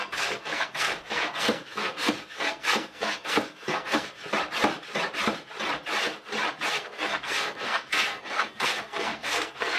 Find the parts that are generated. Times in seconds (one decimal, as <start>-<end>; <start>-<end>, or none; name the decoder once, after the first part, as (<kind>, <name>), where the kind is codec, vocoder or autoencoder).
0.0-4.2 (codec, SNAC); 6.7-9.8